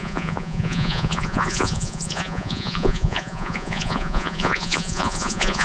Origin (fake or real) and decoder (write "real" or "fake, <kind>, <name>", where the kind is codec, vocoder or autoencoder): fake, vocoder, Vocos